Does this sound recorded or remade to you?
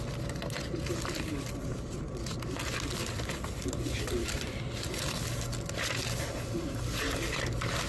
recorded